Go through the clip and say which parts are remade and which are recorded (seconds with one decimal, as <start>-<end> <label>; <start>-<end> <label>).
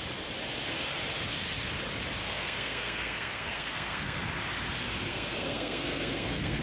0.0-2.2 recorded; 2.2-4.2 remade; 4.2-5.1 recorded; 5.1-6.6 remade